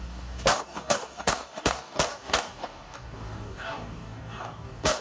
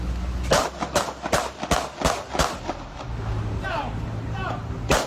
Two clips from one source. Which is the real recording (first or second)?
second